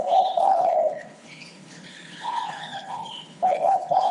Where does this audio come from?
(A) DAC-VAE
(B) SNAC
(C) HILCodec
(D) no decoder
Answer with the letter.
C